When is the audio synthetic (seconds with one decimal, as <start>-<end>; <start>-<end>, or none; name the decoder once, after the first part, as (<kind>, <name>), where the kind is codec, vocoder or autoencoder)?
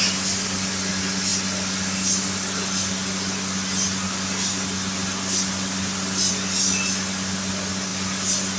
none